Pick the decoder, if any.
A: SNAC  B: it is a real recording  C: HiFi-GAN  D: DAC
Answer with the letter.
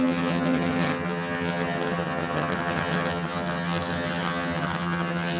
C